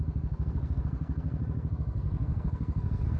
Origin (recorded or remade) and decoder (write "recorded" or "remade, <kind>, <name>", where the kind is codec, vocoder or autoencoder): remade, codec, SNAC